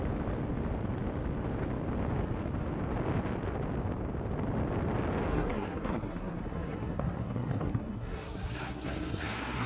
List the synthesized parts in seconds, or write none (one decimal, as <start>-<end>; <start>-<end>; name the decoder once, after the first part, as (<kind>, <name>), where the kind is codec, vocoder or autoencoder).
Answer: 5.3-9.7 (codec, SNAC)